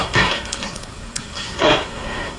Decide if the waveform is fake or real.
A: fake